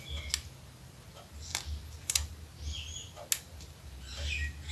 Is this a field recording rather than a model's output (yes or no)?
yes